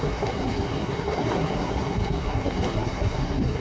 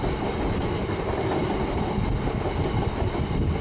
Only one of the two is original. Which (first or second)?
second